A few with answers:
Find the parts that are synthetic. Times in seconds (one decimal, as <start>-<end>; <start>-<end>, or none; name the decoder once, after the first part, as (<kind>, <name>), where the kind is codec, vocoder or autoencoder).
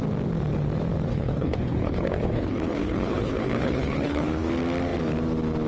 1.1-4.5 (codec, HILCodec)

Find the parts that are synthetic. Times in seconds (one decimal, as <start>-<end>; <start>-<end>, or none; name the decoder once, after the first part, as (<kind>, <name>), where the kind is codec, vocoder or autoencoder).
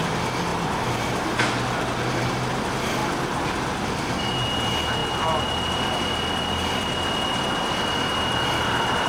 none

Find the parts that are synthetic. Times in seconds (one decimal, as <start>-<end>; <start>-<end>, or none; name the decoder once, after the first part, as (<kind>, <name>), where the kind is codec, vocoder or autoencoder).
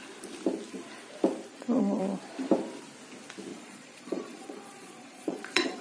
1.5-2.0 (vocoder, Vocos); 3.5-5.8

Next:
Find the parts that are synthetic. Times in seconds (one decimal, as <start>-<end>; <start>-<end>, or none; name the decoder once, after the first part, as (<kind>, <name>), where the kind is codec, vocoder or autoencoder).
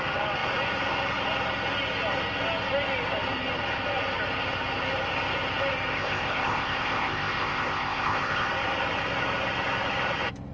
5.9-8.5 (codec, ZipCodec)